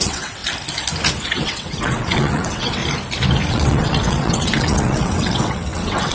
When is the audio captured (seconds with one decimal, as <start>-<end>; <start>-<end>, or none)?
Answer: 0.4-1.2; 2.8-3.5